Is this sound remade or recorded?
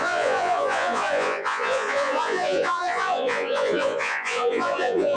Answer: remade